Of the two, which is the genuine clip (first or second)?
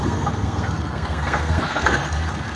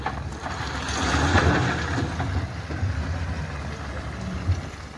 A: second